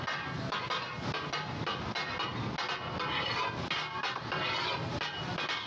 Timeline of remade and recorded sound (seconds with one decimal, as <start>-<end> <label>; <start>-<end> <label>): 0.0-5.7 recorded